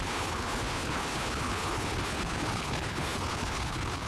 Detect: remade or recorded remade